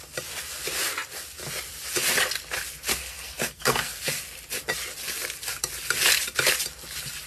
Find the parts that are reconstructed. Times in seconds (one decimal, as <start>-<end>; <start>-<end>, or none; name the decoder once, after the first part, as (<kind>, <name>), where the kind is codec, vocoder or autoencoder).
2.9-4.2 (codec, SNAC)